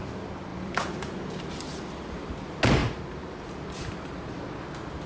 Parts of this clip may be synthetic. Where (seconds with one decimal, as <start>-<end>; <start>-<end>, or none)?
0.5-2.3; 2.8-4.3